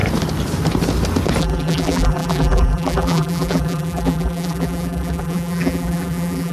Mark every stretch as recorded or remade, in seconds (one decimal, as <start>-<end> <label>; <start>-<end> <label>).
0.0-1.4 recorded; 1.4-6.5 remade